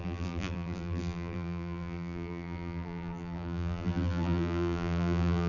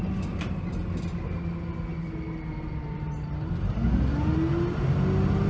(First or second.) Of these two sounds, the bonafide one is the second